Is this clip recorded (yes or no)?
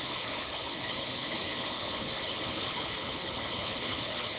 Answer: no